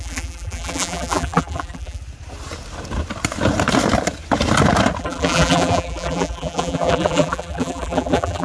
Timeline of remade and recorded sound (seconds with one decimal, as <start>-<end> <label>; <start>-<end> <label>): 0.0-2.0 remade; 2.0-5.0 recorded; 5.0-8.4 remade